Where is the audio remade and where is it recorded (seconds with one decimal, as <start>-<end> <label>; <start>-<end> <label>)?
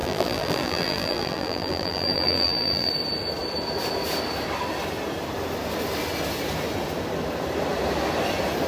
0.0-2.9 remade; 2.9-8.7 recorded